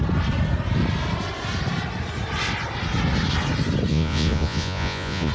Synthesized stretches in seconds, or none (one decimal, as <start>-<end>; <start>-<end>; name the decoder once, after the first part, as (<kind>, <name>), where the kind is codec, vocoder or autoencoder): 3.9-5.3 (vocoder, Vocos)